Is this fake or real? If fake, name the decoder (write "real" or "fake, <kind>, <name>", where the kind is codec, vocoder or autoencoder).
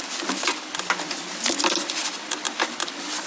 real